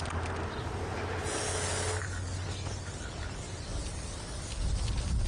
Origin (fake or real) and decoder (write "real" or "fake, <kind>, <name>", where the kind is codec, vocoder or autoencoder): real